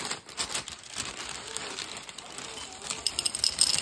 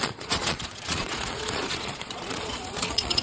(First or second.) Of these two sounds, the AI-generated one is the second